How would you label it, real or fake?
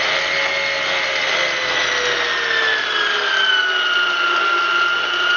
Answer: real